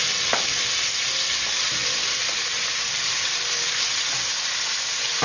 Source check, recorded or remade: recorded